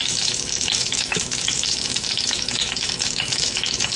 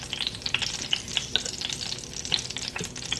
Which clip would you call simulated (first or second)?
first